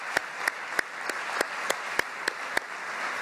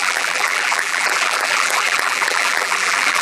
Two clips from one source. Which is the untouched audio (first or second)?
first